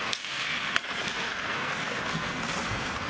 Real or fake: fake